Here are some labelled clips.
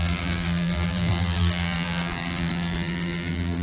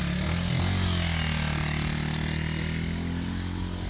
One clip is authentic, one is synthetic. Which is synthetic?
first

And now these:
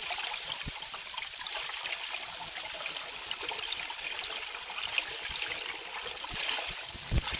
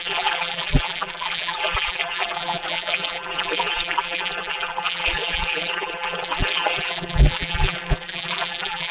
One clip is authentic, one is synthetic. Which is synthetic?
second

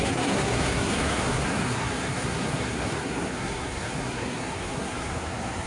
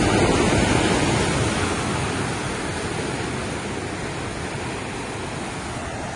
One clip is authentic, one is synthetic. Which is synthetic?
first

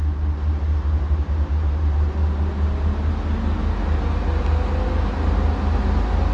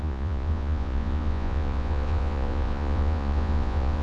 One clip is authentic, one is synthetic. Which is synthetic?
second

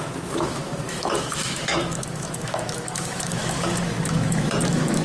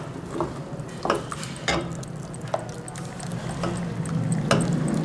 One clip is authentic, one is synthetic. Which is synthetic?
first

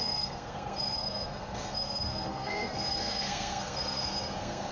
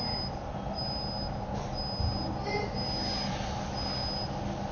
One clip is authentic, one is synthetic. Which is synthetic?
first